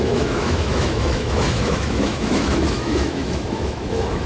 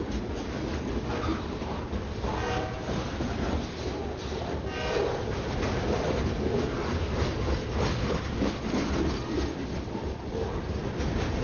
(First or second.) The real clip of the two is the second